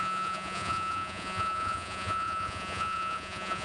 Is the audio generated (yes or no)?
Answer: yes